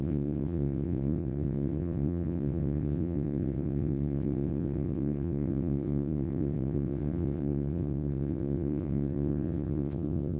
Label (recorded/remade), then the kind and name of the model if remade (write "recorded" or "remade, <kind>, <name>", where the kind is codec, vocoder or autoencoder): remade, vocoder, WaveNeXt